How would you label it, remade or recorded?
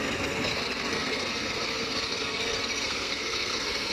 remade